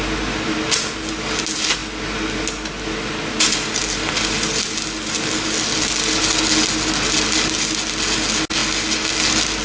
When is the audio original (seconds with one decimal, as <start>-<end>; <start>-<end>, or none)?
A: 0.0-9.6